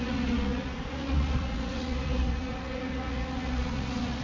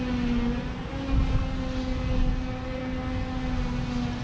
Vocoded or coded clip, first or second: first